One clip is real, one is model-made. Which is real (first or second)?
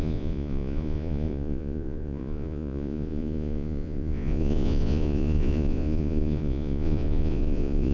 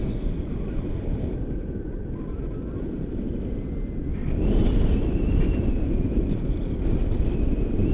second